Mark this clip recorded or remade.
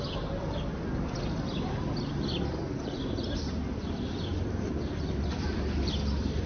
remade